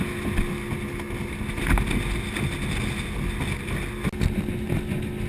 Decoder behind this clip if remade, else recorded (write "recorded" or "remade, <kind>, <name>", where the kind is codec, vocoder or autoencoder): recorded